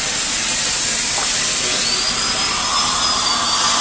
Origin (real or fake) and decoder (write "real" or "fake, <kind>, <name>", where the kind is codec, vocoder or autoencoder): real